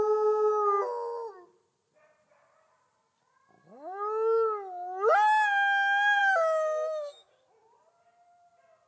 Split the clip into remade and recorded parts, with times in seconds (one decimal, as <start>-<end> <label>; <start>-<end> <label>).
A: 0.0-6.2 recorded; 6.2-7.3 remade; 7.3-8.9 recorded